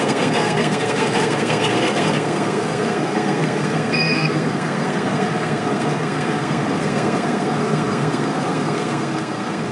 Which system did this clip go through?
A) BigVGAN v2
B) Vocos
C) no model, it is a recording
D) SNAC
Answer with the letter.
D